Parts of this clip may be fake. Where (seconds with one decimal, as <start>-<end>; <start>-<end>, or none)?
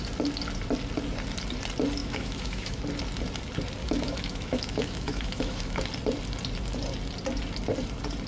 2.0-2.8; 3.8-5.8